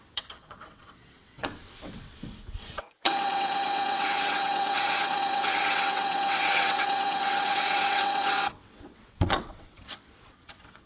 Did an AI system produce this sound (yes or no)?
yes